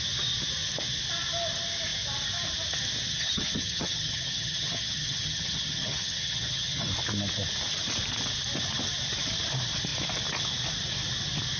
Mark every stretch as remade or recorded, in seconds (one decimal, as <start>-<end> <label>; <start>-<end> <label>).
0.0-3.1 recorded; 3.1-6.9 remade; 6.9-11.6 recorded